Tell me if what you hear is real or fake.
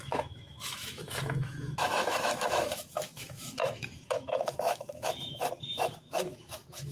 fake